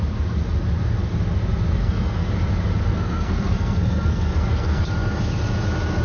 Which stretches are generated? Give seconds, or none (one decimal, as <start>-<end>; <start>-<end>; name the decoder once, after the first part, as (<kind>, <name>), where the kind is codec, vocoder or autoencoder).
1.7-2.3 (codec, SNAC); 2.9-4.8